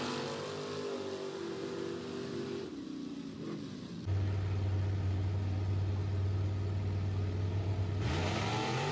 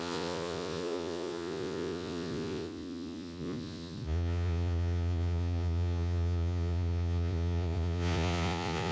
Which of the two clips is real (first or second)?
first